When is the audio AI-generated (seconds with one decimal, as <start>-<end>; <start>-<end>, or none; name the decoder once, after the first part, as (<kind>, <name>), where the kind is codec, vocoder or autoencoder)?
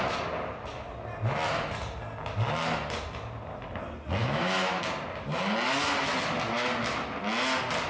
4.2-4.8 (autoencoder, DAC-VAE)